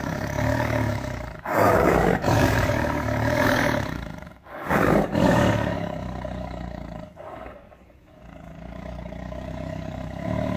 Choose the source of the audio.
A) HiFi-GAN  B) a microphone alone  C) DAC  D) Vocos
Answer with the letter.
C